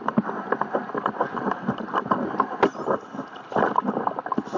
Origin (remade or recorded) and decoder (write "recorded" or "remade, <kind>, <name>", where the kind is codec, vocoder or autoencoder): recorded